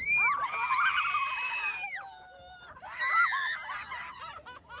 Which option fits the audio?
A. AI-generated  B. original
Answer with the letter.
B